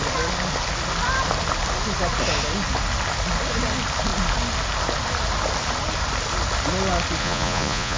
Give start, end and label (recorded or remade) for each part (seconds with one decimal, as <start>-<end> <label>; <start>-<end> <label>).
0.0-7.2 recorded; 7.2-8.0 remade